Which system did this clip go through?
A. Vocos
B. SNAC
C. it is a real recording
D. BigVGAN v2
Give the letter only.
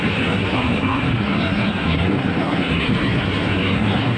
B